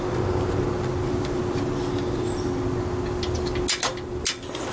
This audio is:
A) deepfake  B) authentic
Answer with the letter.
B